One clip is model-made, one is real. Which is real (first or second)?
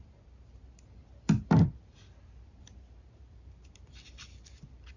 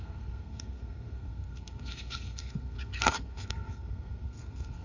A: first